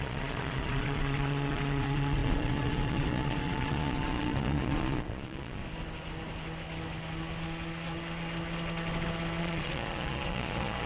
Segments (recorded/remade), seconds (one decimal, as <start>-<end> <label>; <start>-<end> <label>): 0.0-5.6 remade; 5.6-9.4 recorded; 9.4-10.9 remade